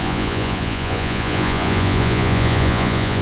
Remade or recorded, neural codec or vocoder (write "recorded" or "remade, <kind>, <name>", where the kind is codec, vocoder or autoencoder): remade, vocoder, Vocos